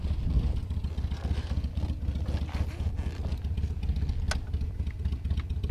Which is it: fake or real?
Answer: real